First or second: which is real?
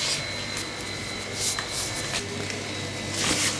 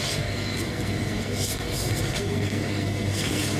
first